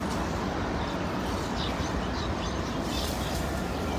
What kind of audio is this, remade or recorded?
recorded